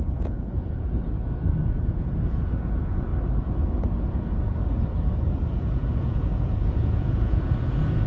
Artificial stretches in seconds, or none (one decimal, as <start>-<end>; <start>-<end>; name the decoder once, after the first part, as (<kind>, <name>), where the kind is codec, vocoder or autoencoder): 0.0-3.1 (vocoder, Vocos); 5.5-8.1